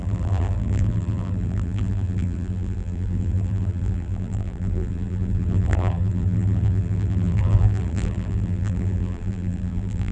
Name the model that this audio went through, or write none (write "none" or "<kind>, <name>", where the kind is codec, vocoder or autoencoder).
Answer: vocoder, BigVGAN v2